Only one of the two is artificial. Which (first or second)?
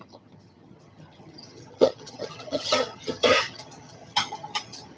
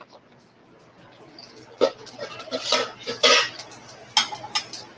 first